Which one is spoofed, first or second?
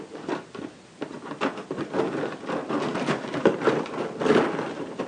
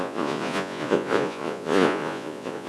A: second